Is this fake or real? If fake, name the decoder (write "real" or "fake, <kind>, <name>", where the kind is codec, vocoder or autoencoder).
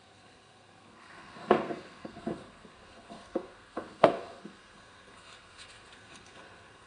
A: fake, codec, SNAC